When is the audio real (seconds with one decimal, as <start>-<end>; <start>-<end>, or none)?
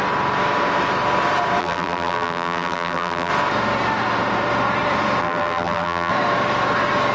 0.0-1.6; 3.3-5.2; 6.1-7.1